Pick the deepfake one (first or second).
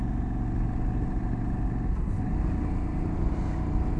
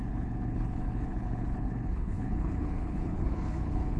second